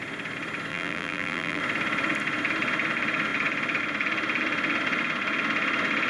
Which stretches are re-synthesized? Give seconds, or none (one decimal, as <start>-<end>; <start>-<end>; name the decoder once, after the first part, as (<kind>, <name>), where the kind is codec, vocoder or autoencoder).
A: 0.7-1.6 (vocoder, BigVGAN v2)